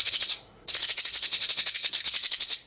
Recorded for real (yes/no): no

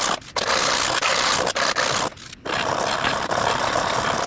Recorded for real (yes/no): yes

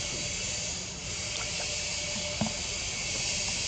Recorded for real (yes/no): yes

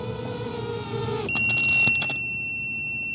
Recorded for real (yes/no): yes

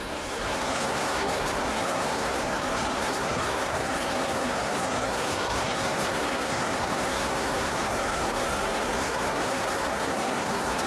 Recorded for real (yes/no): no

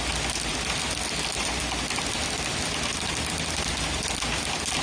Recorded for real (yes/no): yes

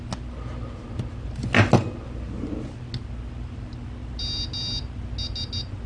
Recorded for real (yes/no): yes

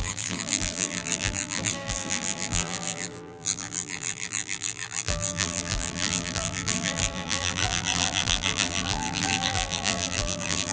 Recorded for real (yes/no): no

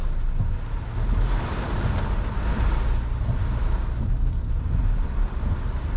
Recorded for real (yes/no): yes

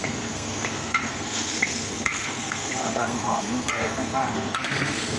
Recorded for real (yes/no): no